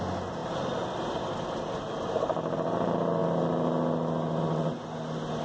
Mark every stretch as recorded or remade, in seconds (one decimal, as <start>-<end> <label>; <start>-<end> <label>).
0.0-5.4 recorded